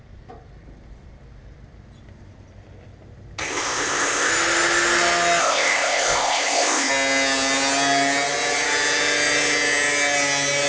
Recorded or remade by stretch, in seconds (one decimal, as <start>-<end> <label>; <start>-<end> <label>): 0.0-3.4 recorded; 3.4-4.3 remade; 4.3-5.4 recorded; 5.4-6.9 remade; 6.9-10.7 recorded